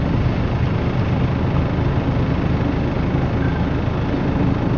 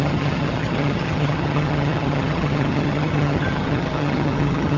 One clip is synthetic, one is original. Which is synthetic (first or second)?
second